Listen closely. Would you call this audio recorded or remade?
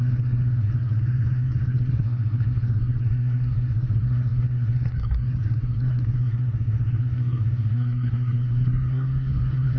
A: remade